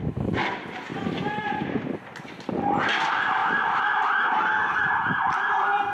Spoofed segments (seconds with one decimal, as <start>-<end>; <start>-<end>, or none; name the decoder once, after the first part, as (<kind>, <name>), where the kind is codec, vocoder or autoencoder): 0.9-1.9 (vocoder, BigVGAN v2); 3.4-4.9